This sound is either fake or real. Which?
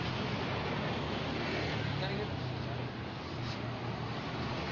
real